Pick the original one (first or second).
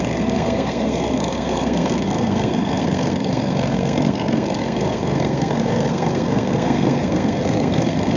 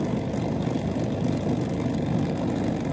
second